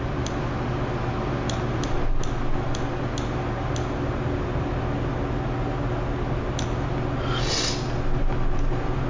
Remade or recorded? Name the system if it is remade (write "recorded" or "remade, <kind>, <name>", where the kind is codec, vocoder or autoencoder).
recorded